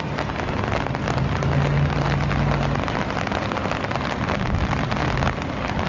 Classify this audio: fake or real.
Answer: real